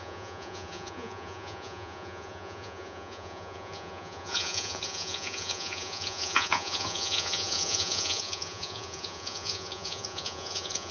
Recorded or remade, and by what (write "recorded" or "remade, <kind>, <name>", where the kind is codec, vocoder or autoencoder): remade, vocoder, Vocos